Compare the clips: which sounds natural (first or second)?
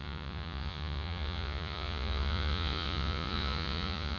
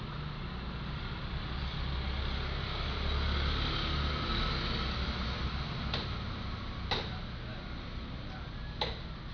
second